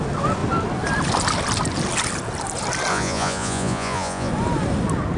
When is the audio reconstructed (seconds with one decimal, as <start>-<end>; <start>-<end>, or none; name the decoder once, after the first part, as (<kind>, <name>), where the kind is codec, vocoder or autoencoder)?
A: 2.9-4.3 (vocoder, Vocos)